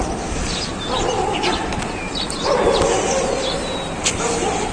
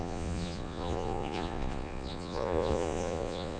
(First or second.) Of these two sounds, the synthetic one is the second